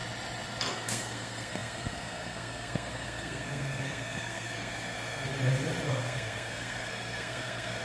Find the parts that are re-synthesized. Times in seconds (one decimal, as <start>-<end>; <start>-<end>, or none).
0.7-5.3; 5.9-7.8